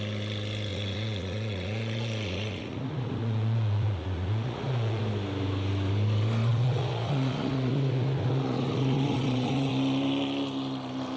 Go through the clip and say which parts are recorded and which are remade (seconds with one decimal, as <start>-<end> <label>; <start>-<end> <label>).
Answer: 0.0-0.7 recorded; 0.7-5.0 remade; 5.0-6.5 recorded; 6.5-9.7 remade; 9.7-11.2 recorded